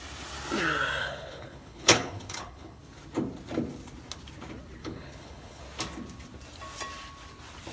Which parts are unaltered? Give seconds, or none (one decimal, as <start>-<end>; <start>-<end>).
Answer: 0.0-1.0; 2.8-4.8; 5.6-7.7